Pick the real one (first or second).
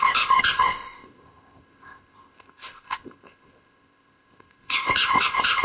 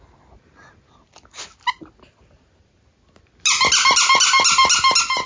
second